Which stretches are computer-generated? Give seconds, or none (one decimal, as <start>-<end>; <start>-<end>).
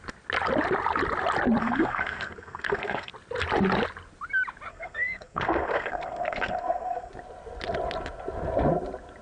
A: 1.6-3.1; 4.7-7.1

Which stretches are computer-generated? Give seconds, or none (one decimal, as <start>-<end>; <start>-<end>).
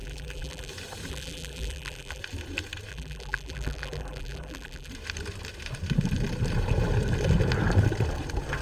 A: 0.0-0.7; 1.1-2.2; 2.9-4.9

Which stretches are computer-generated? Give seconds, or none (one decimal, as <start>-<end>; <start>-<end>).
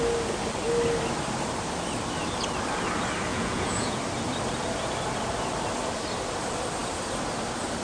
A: 3.3-4.0